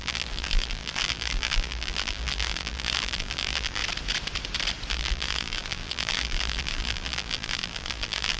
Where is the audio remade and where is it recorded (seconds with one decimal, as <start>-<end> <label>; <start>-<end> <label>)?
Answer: 0.0-3.8 remade; 3.8-4.9 recorded; 4.9-8.4 remade